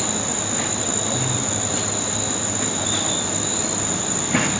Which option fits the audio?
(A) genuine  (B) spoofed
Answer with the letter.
A